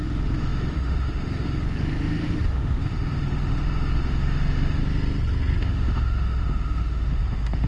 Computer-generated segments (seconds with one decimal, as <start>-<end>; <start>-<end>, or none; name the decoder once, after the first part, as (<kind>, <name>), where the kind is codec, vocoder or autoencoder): 0.0-4.8 (autoencoder, DAC-VAE); 5.6-7.7